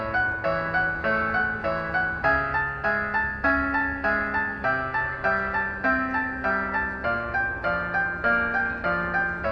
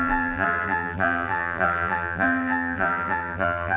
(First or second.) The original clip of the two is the first